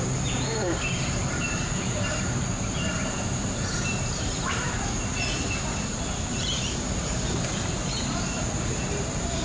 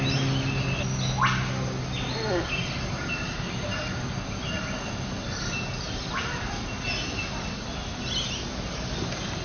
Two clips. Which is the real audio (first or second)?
second